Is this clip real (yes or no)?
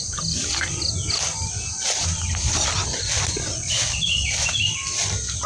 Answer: yes